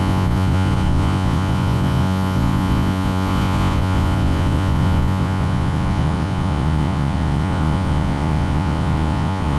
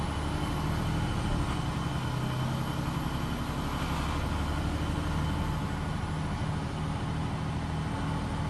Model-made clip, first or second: first